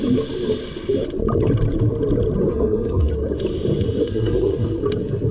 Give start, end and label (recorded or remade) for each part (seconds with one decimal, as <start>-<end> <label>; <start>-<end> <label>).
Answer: 0.0-2.5 recorded; 2.5-3.1 remade; 3.1-4.0 recorded; 4.0-4.8 remade; 4.8-5.3 recorded